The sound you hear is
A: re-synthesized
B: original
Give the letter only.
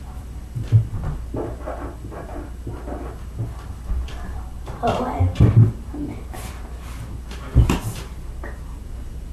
B